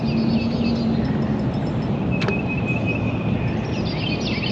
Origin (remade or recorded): recorded